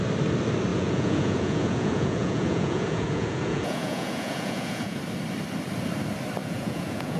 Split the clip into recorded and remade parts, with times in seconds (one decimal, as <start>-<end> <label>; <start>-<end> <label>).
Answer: 0.0-0.7 recorded; 0.7-5.0 remade; 5.0-6.4 recorded; 6.4-7.2 remade